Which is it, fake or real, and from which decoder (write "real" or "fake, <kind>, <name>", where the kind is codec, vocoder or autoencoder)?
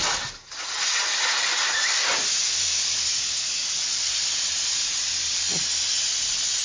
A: real